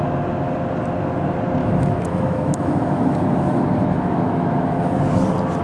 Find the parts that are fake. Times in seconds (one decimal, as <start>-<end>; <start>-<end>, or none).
1.6-5.0